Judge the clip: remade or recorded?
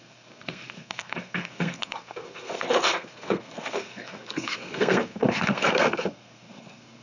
remade